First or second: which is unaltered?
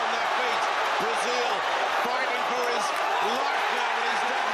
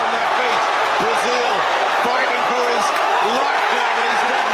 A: first